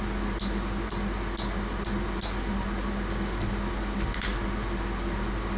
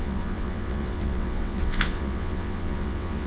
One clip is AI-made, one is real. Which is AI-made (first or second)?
second